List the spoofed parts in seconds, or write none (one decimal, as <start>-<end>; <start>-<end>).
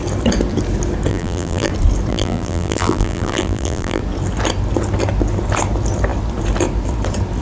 1.1-1.7; 2.1-4.0